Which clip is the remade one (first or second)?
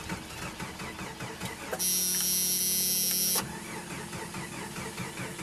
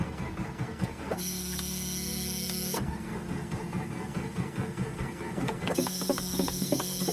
second